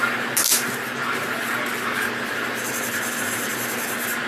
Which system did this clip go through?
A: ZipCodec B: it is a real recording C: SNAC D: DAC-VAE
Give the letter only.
B